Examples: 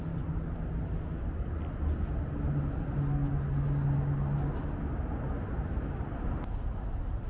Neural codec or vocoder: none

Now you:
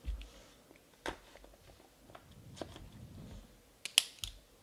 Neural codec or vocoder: none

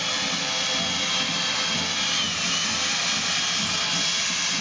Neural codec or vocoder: none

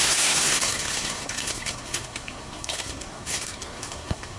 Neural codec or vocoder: codec, SNAC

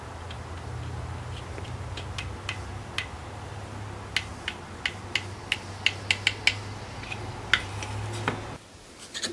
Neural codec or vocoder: none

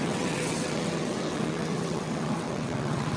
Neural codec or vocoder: vocoder, WaveNeXt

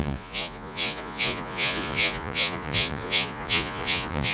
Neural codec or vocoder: vocoder, Vocos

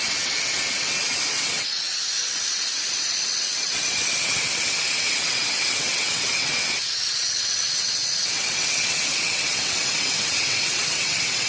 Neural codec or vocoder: vocoder, WaveNeXt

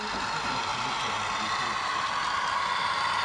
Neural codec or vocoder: none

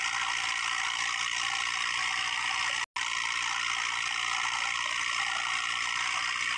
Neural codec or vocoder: none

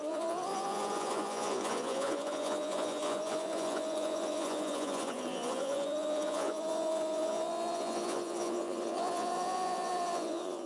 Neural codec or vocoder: vocoder, Vocos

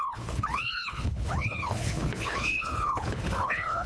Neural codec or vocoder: codec, HILCodec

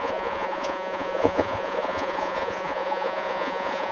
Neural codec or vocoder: vocoder, Vocos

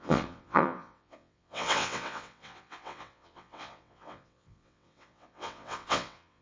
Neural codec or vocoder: vocoder, WaveNeXt